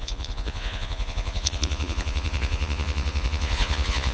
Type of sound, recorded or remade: remade